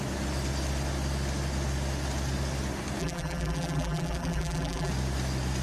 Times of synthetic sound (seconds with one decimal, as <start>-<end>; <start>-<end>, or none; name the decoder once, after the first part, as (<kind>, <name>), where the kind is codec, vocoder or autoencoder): 3.0-4.9 (vocoder, BigVGAN v2)